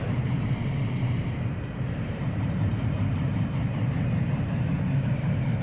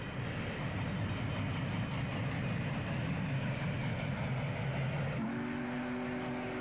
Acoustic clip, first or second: second